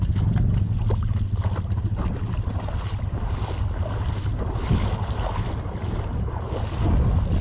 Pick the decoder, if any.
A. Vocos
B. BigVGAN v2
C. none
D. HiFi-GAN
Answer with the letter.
C